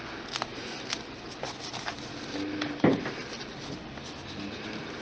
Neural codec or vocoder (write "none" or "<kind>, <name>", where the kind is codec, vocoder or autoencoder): none